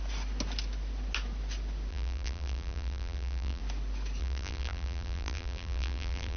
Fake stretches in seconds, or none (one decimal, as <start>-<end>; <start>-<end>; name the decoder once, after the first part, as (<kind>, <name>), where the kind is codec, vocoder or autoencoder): 1.9-3.6 (vocoder, BigVGAN v2); 4.2-6.4